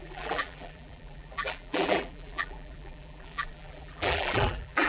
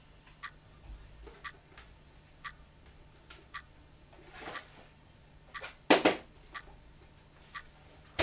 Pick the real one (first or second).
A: second